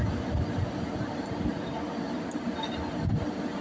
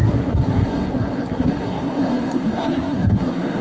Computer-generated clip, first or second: second